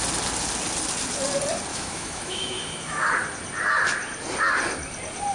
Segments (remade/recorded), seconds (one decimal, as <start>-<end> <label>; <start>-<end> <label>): 0.0-1.7 recorded; 1.7-3.1 remade; 3.1-5.3 recorded